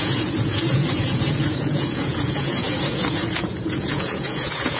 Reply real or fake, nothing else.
fake